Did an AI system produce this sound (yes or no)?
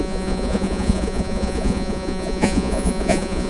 yes